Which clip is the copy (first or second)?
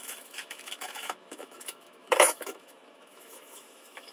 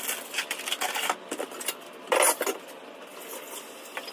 first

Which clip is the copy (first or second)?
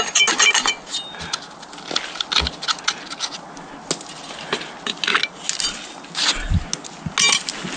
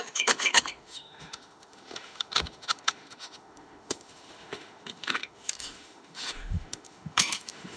second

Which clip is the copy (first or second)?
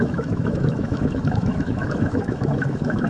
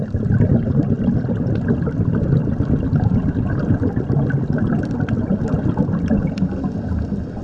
first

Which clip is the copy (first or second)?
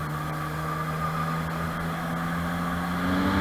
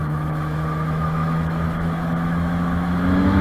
second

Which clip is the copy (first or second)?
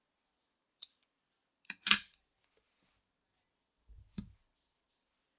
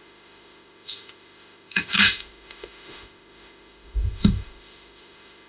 second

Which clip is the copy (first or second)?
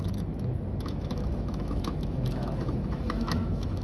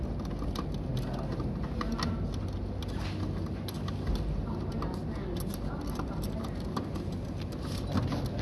first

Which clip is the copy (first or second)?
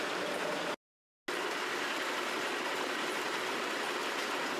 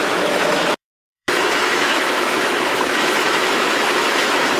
second